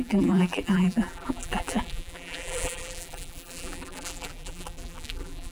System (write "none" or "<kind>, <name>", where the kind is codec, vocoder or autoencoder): vocoder, BigVGAN v2